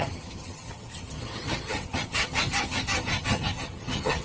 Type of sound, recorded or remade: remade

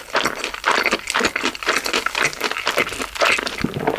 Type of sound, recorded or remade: recorded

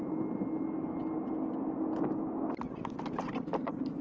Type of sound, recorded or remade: recorded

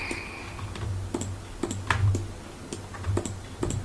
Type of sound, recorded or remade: recorded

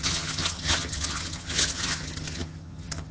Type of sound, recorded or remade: remade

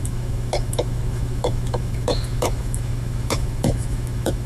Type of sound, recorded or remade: remade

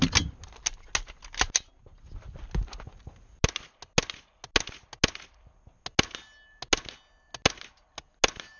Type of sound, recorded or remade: recorded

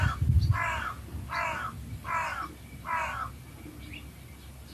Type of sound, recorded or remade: recorded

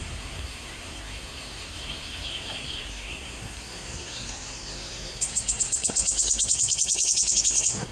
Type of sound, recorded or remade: remade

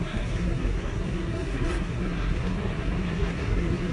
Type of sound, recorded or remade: remade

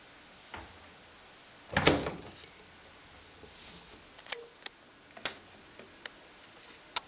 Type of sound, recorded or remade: recorded